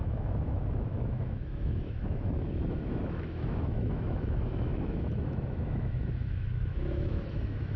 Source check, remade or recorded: remade